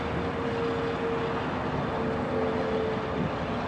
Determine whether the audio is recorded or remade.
recorded